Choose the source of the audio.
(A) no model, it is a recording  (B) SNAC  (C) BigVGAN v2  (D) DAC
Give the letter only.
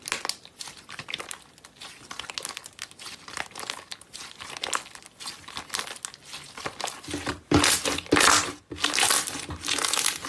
A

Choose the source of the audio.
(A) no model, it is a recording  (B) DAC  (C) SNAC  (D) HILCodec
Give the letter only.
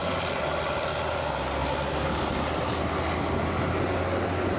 A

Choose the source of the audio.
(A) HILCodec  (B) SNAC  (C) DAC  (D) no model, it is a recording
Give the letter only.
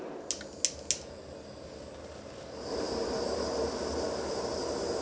D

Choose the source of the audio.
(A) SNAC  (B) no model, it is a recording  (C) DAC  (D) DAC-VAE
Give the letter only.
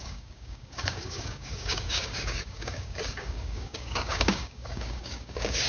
C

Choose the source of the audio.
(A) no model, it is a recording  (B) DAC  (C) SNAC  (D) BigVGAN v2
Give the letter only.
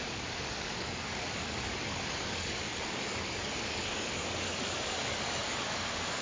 B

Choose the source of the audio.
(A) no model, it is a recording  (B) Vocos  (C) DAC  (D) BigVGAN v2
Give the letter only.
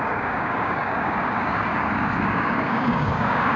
C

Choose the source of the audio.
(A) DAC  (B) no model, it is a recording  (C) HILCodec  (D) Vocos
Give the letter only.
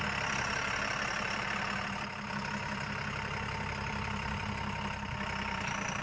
B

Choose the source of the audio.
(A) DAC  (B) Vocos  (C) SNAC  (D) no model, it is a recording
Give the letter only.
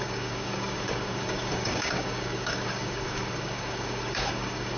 A